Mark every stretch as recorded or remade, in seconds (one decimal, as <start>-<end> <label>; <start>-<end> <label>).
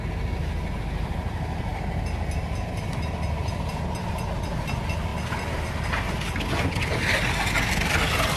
0.0-8.4 recorded